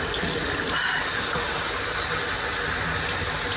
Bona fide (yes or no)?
yes